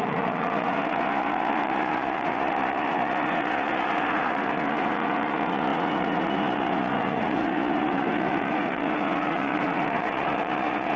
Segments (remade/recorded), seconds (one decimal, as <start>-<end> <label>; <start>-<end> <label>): 0.0-11.0 remade